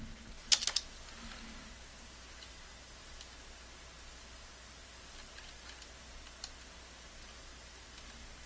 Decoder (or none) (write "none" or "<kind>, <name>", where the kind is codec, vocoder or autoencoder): none